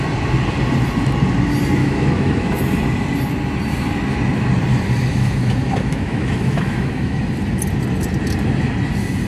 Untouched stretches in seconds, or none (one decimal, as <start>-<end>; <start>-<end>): 0.0-1.8; 2.6-5.1; 7.2-9.3